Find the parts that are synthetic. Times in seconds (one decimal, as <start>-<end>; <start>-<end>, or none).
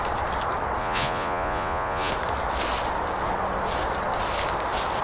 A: 0.8-2.1